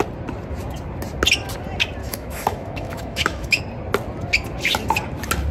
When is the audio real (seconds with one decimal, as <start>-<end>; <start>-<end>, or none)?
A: 0.0-2.0; 3.6-5.5